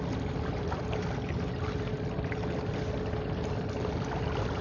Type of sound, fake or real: real